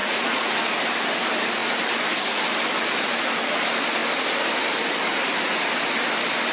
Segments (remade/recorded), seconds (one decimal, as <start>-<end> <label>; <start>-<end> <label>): 0.0-0.5 remade; 0.5-6.5 recorded